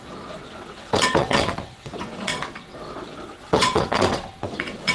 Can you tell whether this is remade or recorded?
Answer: remade